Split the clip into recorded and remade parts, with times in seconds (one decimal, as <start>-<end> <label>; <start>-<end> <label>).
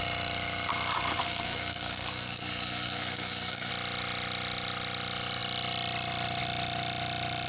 0.0-1.2 recorded; 1.2-3.7 remade; 3.7-7.5 recorded